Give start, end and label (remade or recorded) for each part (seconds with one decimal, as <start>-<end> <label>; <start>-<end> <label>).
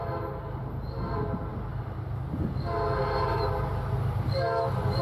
0.0-5.0 recorded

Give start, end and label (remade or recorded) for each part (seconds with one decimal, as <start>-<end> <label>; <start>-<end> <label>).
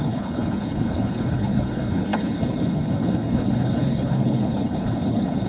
0.0-5.5 remade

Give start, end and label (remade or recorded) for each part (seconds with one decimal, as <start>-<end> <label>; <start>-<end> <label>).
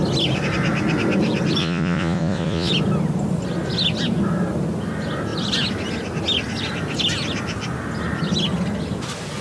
0.0-1.6 recorded; 1.6-2.7 remade; 2.7-9.4 recorded